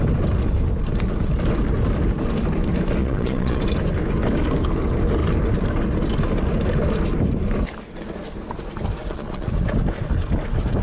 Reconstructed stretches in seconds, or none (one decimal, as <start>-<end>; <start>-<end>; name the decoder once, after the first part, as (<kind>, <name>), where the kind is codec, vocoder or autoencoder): 3.0-3.6 (vocoder, Vocos); 9.0-9.5